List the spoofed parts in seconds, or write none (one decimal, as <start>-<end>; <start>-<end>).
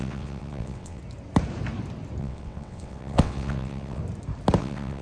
0.0-1.0; 2.2-4.0; 4.6-5.0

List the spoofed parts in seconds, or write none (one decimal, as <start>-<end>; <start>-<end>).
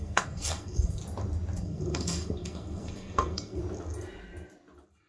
0.0-1.0; 1.6-3.6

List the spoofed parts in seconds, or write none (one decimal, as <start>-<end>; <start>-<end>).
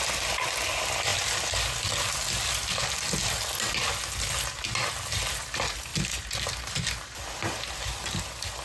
none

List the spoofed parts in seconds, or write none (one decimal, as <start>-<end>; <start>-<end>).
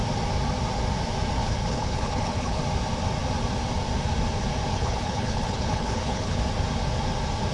1.4-2.6; 4.7-6.4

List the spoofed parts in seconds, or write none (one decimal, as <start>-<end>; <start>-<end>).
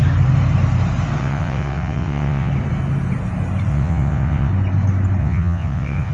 1.2-2.5; 3.7-4.5; 5.2-6.1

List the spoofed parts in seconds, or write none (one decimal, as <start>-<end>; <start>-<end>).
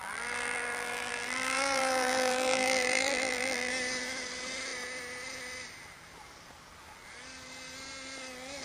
0.0-3.7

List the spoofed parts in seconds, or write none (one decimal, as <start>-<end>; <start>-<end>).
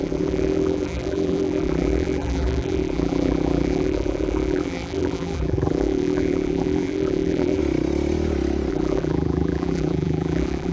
0.0-7.6; 8.7-10.7